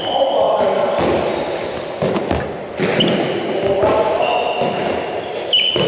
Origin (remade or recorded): recorded